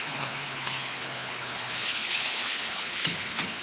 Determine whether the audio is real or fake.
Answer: fake